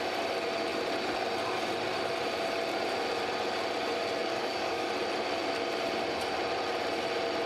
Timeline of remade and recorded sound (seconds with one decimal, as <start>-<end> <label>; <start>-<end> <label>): 0.0-4.2 recorded; 4.2-4.9 remade; 4.9-7.5 recorded